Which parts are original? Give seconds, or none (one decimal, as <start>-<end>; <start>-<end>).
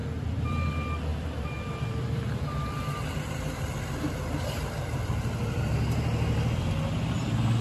0.7-1.1; 5.6-7.6